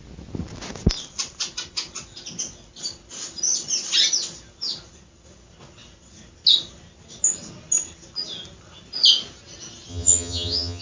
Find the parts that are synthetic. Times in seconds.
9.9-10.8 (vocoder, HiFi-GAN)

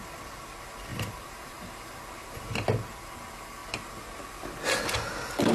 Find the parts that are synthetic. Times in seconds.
0.9-2.0 (vocoder, BigVGAN v2)

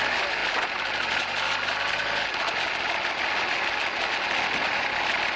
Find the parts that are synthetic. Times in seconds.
none

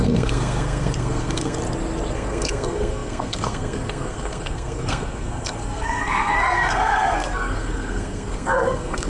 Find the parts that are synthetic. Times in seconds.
0.0-1.6 (codec, SNAC); 2.1-9.1

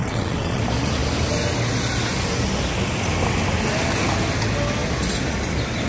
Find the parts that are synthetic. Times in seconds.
0.0-0.6 (vocoder, WaveNeXt)